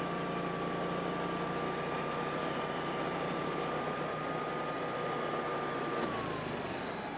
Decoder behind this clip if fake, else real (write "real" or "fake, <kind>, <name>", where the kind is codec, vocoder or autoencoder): real